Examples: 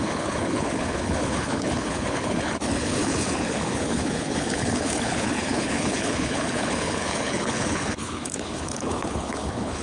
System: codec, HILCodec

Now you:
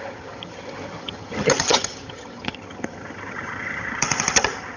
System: vocoder, HiFi-GAN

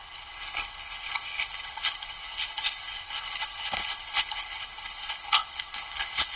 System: codec, HILCodec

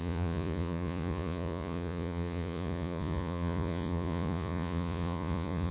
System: vocoder, Vocos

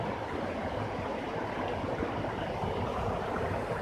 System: vocoder, BigVGAN v2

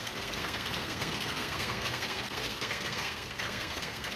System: codec, SNAC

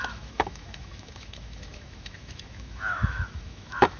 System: autoencoder, DAC-VAE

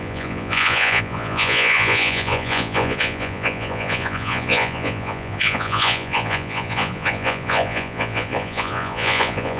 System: vocoder, Vocos